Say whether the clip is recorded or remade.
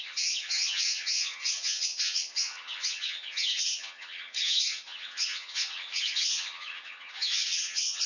remade